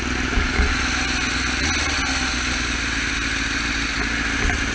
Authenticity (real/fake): real